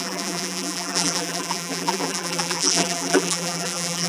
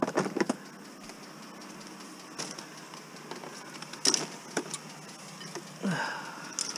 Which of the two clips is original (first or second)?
second